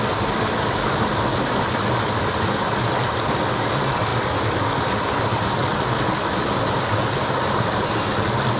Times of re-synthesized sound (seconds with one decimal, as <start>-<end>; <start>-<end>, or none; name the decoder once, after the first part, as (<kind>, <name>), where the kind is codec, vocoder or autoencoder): none